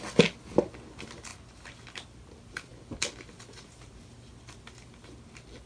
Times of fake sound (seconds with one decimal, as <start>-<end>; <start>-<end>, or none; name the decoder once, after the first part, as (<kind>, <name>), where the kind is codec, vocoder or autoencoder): none